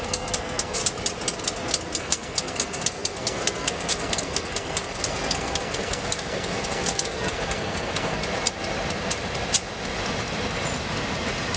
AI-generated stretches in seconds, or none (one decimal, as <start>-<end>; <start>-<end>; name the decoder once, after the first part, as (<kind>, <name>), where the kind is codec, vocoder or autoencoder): 0.0-0.8 (codec, SNAC); 2.0-8.2